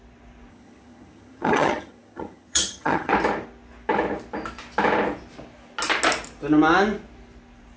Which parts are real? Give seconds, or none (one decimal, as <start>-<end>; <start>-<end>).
0.0-0.5; 3.1-7.8